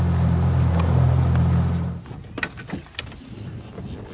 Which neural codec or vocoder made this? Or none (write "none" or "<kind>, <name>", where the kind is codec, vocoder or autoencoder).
none